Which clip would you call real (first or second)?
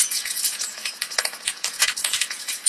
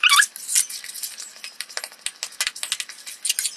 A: second